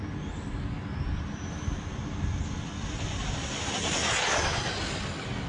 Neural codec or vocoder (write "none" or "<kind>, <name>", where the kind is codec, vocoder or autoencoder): none